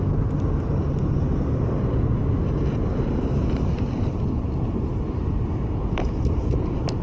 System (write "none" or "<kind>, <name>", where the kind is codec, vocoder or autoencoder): none